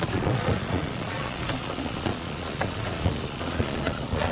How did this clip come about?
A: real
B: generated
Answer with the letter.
B